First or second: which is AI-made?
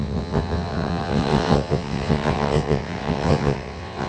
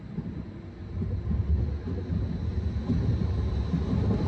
first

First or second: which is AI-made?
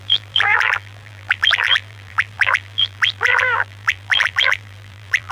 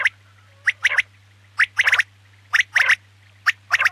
first